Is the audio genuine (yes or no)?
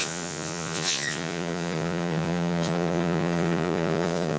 no